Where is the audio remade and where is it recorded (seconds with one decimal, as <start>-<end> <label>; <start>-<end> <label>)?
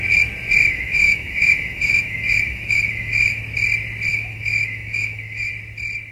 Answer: 0.0-0.6 recorded; 0.6-3.4 remade; 3.4-4.1 recorded; 4.1-5.5 remade; 5.5-6.1 recorded